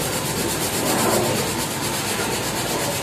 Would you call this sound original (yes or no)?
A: yes